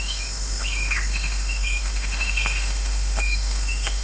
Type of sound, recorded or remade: remade